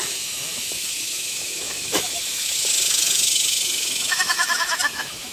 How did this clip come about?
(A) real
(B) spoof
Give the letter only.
B